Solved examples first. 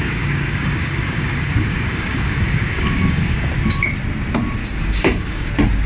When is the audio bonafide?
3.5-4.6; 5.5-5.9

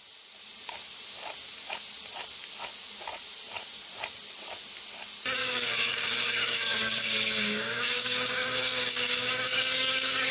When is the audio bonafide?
0.0-5.4

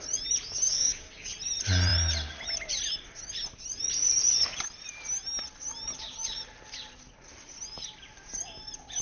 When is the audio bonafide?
0.0-0.7; 1.3-9.0

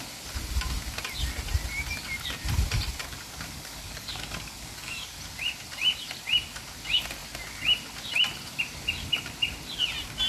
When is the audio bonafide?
0.0-3.0; 5.2-10.3

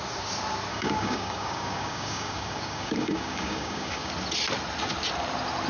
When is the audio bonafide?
0.0-0.7; 4.1-5.7